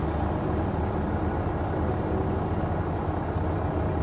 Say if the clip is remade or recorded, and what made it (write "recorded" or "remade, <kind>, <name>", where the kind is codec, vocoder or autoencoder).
recorded